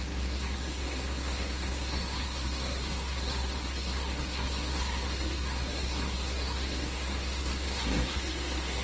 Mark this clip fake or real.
fake